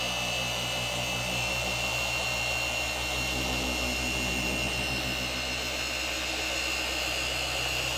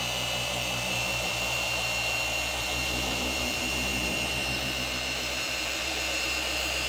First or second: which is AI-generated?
second